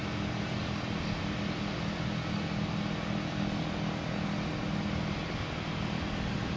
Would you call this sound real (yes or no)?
yes